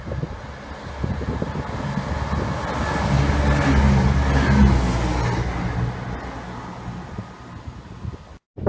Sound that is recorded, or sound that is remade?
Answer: recorded